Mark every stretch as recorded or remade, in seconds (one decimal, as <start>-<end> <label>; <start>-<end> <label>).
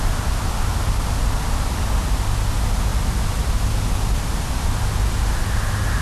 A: 0.0-6.0 recorded